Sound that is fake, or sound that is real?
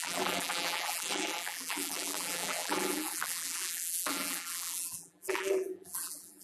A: fake